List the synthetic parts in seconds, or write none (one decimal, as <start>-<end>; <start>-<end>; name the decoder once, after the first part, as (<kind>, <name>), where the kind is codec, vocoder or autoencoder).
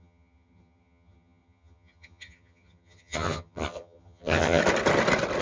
0.0-4.6 (vocoder, HiFi-GAN)